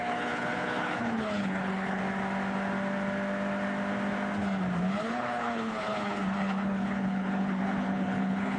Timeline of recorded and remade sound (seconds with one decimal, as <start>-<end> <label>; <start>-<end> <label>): 0.0-2.0 remade; 2.0-5.0 recorded; 5.0-8.6 remade